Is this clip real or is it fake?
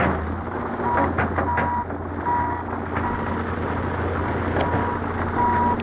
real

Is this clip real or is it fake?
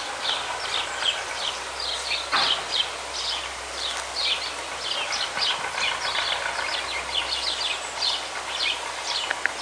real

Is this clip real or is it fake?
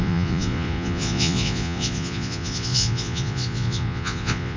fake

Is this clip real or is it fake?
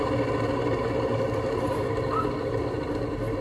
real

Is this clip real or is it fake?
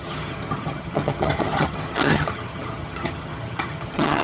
fake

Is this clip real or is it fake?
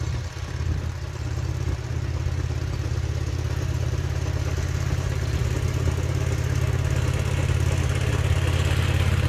real